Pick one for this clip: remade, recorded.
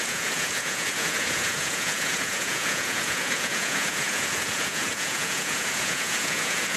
remade